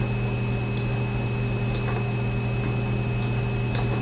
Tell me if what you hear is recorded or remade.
recorded